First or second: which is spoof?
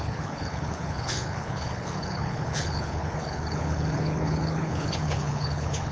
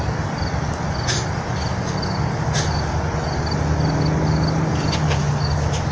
first